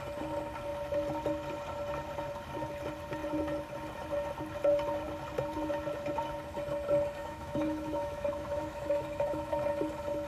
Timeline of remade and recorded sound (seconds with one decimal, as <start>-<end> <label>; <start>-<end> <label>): 0.0-7.2 recorded; 7.2-9.6 remade; 9.6-10.3 recorded